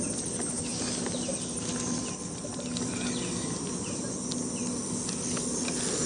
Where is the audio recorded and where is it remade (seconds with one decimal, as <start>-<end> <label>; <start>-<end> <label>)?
0.0-6.1 recorded